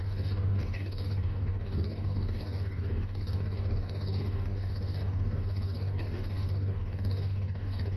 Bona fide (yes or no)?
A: no